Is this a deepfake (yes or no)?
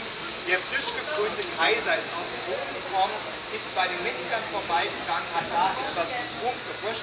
no